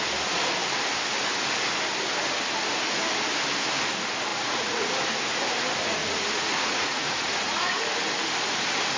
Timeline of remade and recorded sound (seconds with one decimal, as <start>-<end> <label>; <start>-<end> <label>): 0.0-4.3 recorded; 4.3-4.9 remade; 4.9-6.0 recorded; 6.0-7.9 remade; 7.9-9.0 recorded